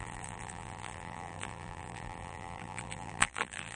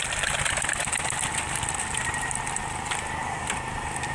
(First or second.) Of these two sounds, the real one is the second